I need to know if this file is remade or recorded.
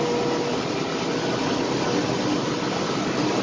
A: recorded